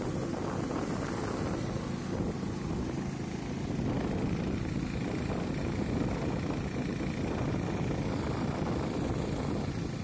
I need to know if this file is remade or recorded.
recorded